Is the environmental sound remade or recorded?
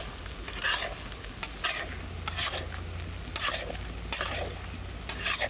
recorded